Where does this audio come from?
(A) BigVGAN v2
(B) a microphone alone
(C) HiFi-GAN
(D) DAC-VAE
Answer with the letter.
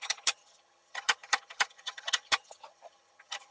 C